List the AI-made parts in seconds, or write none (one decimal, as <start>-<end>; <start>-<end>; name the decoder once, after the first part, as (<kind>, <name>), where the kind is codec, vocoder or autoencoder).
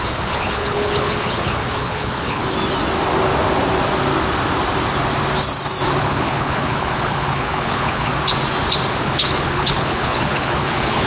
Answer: 0.0-2.4 (codec, HILCodec); 6.0-8.1; 9.0-11.1